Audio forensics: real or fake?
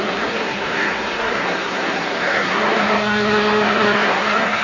fake